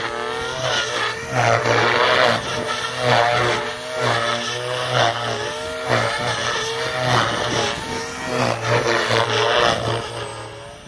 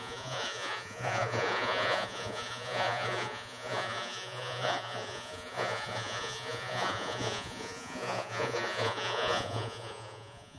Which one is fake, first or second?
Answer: second